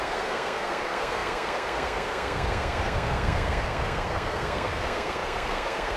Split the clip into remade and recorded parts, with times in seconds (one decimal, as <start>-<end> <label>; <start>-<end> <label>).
0.0-6.0 remade